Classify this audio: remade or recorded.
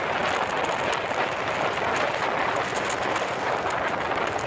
recorded